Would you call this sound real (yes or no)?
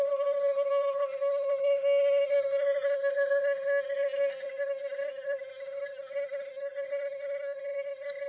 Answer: no